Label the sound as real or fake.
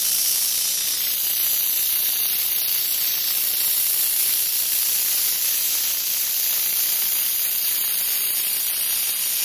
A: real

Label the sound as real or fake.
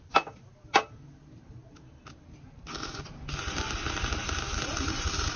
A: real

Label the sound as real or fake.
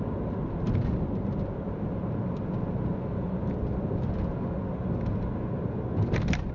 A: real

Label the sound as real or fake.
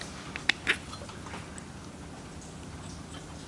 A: real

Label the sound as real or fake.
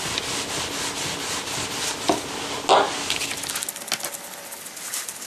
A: real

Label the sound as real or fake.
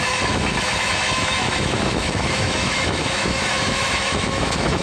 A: fake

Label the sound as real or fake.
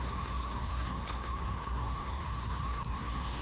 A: fake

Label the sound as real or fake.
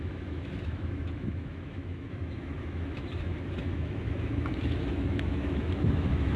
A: fake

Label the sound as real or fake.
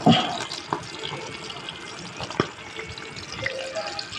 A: real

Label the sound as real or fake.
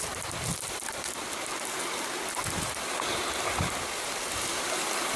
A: real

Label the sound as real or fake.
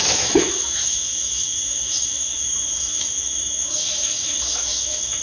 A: fake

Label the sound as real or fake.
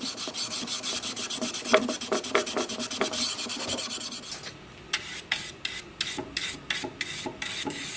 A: real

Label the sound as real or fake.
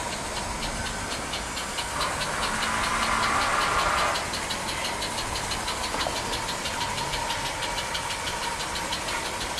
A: real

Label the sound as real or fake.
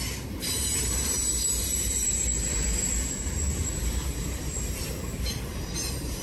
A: fake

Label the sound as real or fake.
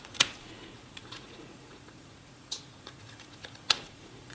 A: fake